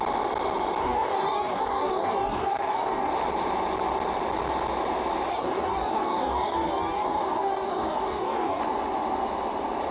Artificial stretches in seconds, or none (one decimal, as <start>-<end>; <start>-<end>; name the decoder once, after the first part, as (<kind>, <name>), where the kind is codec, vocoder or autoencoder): 0.8-3.1 (codec, DAC); 5.3-8.6